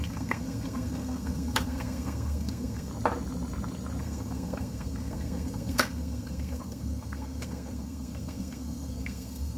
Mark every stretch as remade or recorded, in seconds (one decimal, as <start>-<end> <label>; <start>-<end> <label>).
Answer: 0.0-2.9 remade; 2.9-4.0 recorded; 4.0-9.6 remade